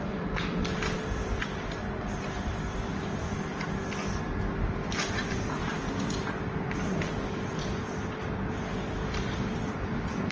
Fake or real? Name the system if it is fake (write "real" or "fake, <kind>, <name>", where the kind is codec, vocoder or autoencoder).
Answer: real